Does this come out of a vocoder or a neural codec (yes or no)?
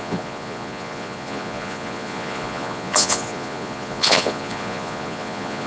yes